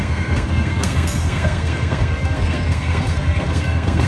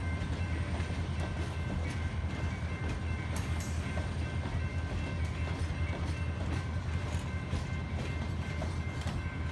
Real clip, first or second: second